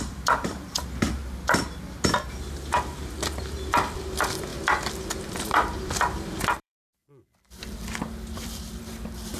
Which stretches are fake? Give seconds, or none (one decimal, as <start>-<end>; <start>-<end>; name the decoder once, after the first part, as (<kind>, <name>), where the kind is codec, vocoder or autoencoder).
0.0-1.2 (vocoder, BigVGAN v2); 3.7-4.5; 5.2-9.4